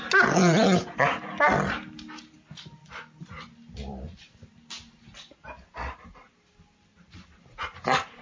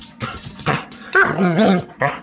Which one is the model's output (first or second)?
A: second